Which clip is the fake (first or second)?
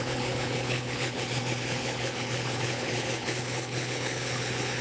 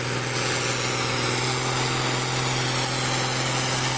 first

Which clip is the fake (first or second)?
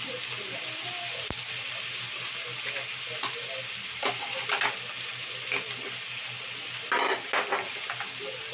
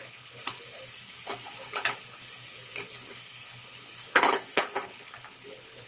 second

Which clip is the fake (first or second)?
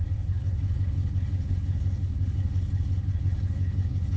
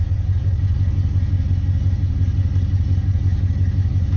first